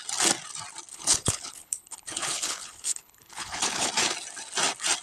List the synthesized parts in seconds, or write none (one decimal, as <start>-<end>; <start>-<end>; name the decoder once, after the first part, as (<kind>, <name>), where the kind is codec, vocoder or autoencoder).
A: 0.9-3.9 (codec, HILCodec)